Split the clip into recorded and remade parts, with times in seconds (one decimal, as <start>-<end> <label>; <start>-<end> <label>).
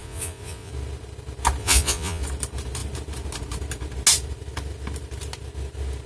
0.0-0.7 remade; 0.7-1.6 recorded; 1.6-2.2 remade; 2.2-6.1 recorded